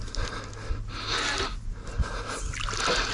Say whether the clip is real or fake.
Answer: real